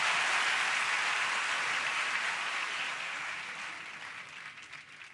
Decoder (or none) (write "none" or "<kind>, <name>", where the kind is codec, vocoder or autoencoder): none